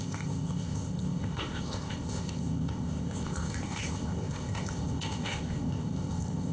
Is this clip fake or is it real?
fake